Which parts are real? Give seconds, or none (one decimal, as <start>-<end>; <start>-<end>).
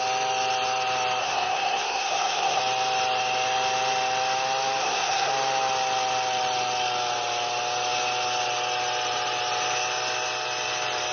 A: 0.0-1.2; 2.6-4.8; 5.3-11.1